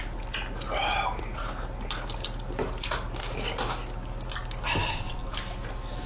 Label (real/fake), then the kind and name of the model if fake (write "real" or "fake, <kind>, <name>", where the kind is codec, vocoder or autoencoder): real